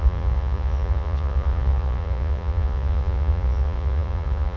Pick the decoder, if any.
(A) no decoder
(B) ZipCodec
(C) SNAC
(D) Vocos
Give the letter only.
D